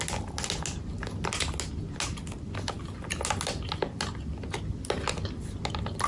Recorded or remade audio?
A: recorded